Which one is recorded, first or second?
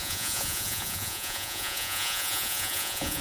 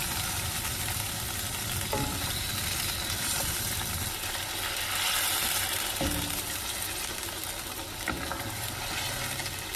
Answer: second